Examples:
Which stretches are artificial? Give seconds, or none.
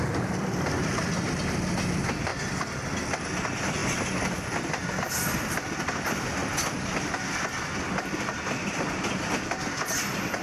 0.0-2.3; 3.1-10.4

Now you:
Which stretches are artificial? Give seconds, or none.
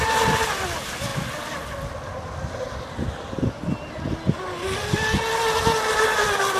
none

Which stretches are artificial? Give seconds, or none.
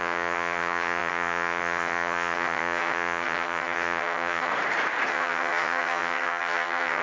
0.0-4.5; 5.1-7.0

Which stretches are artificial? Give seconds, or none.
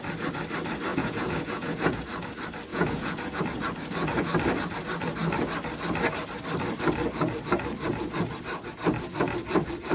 0.9-2.0; 2.7-3.4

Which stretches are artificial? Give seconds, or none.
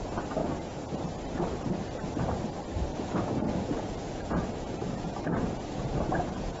0.4-1.0; 2.9-6.6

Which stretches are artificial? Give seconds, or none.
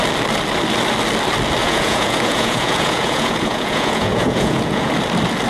1.6-4.9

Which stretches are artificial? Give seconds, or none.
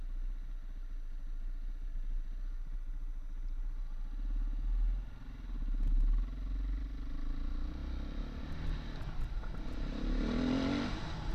none